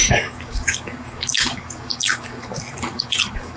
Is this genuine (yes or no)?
no